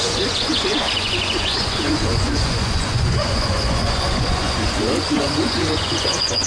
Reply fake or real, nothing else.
fake